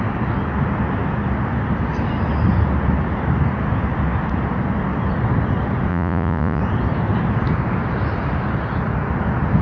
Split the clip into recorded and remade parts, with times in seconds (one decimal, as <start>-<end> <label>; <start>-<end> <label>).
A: 0.0-5.9 recorded; 5.9-6.6 remade; 6.6-9.6 recorded